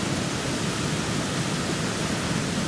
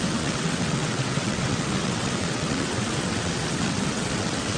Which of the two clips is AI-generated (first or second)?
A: second